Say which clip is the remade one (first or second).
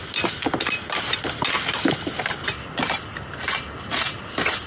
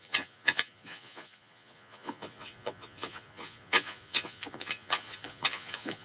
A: second